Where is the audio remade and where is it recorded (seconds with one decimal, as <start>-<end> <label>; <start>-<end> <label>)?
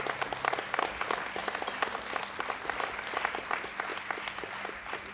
0.0-5.1 recorded